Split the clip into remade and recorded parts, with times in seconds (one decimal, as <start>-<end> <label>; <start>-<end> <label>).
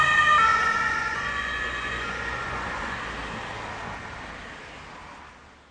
0.0-0.5 recorded; 0.5-3.0 remade; 3.0-5.7 recorded